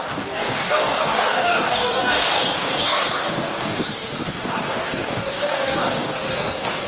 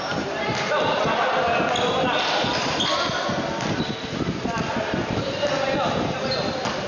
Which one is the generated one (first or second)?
first